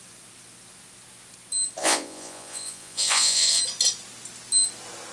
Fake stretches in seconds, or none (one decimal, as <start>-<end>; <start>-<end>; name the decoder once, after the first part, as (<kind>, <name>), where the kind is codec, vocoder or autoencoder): 1.8-3.6 (vocoder, Vocos)